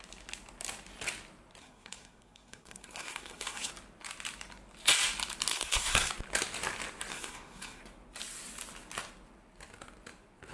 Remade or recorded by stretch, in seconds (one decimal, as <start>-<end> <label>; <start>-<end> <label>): 0.0-1.6 recorded; 1.6-3.7 remade; 3.7-5.5 recorded; 5.5-6.1 remade; 6.1-7.1 recorded; 7.1-7.8 remade; 7.8-10.5 recorded